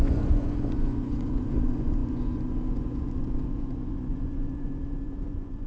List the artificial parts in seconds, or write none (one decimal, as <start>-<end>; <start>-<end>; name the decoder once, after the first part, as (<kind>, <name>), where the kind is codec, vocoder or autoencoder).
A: 0.0-5.7 (vocoder, Vocos)